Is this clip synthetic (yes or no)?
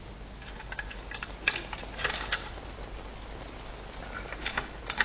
no